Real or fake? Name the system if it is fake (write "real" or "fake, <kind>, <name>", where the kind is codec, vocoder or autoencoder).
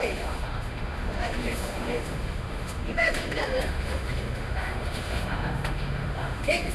fake, autoencoder, DAC-VAE